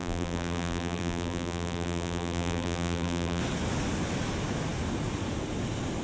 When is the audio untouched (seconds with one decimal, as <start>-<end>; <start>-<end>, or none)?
3.4-6.0